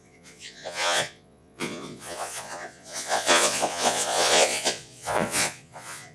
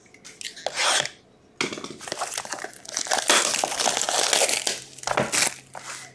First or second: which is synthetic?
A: first